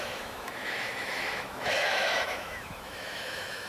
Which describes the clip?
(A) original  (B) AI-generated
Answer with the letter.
B